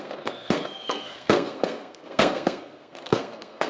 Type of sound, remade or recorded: remade